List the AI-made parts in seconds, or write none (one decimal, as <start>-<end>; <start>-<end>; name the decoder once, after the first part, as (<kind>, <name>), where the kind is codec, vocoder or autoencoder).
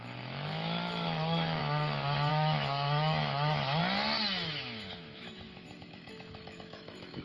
0.0-1.6 (autoencoder, DAC-VAE); 2.3-3.8; 4.6-7.2